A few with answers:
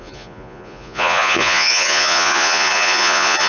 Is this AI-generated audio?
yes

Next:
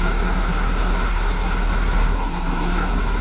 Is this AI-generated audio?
yes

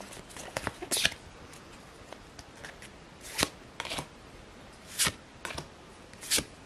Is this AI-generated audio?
no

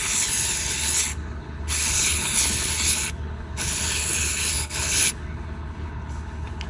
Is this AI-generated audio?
yes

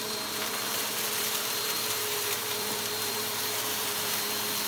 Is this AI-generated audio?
yes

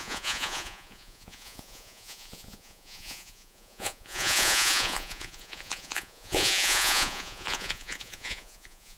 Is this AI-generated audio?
yes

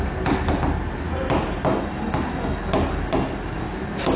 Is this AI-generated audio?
no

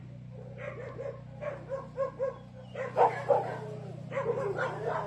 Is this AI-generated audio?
no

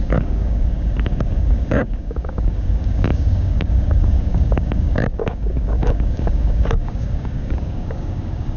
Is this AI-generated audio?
yes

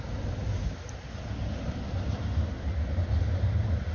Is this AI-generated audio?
no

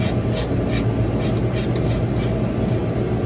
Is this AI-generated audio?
no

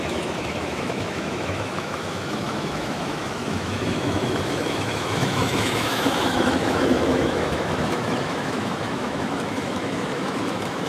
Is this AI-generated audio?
yes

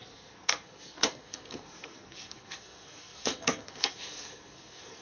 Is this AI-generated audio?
yes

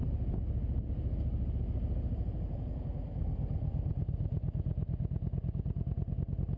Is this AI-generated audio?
no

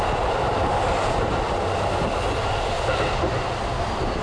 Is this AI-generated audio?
no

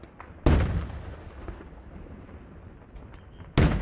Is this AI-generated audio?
no